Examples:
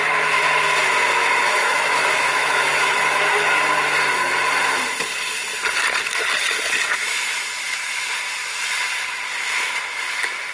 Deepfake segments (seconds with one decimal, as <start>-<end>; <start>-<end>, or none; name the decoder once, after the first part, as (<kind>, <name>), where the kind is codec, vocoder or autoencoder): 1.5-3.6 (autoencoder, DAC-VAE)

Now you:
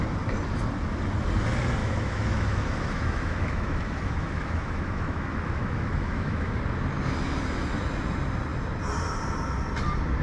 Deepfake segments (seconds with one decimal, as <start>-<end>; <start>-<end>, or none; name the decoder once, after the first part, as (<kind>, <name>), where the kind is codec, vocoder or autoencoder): 1.8-6.6 (autoencoder, DAC-VAE)

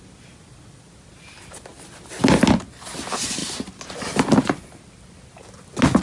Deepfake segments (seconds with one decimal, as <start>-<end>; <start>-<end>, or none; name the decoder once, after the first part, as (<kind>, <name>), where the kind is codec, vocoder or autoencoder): none

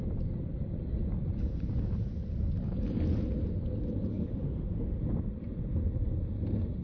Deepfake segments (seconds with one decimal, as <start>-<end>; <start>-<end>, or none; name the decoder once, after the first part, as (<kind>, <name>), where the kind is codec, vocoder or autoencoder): 4.1-5.0 (autoencoder, DAC-VAE)

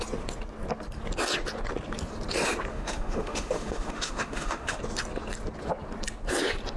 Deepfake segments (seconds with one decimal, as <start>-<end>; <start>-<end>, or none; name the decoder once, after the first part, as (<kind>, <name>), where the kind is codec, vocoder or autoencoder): 2.7-4.8 (autoencoder, DAC-VAE)

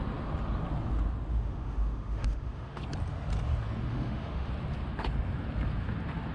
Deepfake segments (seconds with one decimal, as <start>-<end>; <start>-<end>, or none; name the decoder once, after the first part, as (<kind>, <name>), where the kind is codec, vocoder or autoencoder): 1.3-2.8 (autoencoder, DAC-VAE); 3.9-4.5

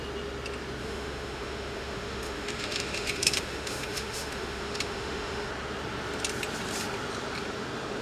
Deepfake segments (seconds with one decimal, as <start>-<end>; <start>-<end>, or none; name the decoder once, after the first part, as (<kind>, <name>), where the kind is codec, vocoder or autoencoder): 0.8-5.5 (autoencoder, DAC-VAE)